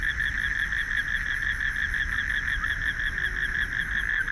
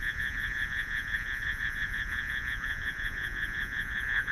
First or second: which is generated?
second